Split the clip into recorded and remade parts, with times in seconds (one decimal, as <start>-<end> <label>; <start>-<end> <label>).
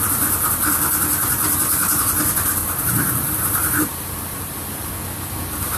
0.0-2.6 recorded; 2.6-4.9 remade; 4.9-5.8 recorded